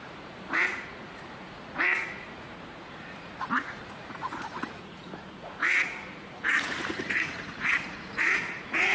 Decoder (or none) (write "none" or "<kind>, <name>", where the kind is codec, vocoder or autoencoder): vocoder, Vocos